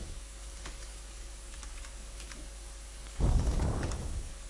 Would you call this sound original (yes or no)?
no